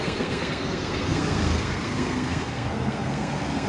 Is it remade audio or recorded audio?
remade